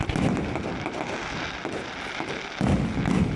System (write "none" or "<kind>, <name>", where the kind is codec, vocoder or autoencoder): none